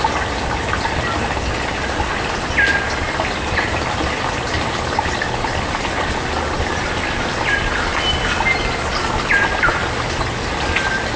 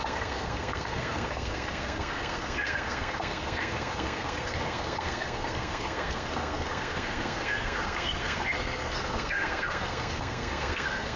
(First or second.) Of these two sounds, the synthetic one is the second